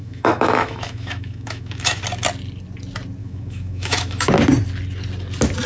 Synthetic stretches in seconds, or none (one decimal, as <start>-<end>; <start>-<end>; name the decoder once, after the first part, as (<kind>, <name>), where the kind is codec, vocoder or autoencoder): 0.0-2.0 (autoencoder, DAC-VAE); 3.2-4.3